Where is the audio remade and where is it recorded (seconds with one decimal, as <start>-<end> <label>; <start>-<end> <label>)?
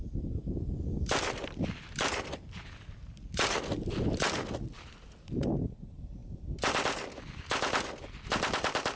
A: 0.0-9.0 recorded